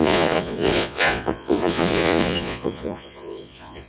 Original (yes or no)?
no